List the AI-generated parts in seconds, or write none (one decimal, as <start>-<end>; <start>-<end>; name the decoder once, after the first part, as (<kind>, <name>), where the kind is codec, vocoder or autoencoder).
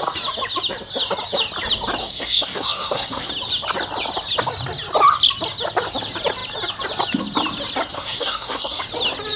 2.0-3.3 (codec, SNAC); 7.9-8.8